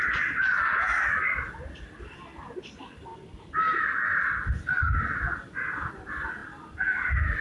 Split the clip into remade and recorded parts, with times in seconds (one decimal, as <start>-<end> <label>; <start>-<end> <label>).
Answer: 0.0-3.1 remade; 3.1-5.9 recorded; 5.9-7.4 remade